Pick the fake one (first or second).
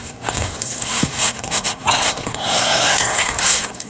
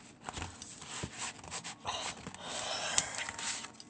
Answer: first